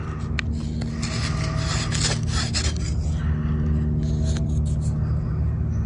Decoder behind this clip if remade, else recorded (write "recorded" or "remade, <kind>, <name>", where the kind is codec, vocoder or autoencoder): recorded